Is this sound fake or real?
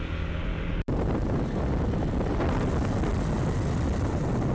real